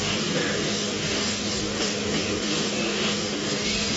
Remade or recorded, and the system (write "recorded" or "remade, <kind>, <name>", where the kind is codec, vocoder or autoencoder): remade, codec, DAC